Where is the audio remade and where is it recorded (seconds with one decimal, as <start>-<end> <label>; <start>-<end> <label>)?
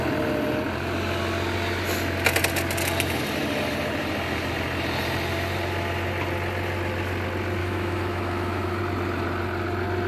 0.0-7.6 recorded; 7.6-8.8 remade; 8.8-10.1 recorded